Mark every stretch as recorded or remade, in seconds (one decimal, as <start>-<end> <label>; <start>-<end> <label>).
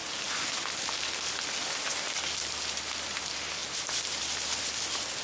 0.0-5.2 recorded